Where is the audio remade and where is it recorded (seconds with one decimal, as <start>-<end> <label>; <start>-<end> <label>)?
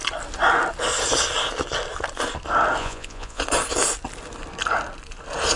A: 0.0-2.8 recorded; 2.8-3.4 remade; 3.4-5.6 recorded